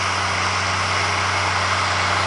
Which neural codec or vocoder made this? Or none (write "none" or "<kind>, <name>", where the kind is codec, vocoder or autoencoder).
none